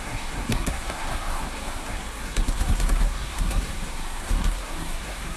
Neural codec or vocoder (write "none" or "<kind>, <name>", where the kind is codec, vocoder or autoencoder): codec, SNAC